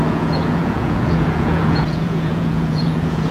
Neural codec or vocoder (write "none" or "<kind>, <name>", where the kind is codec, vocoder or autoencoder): vocoder, Vocos